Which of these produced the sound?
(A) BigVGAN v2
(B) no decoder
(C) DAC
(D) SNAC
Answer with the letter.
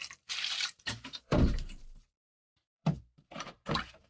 A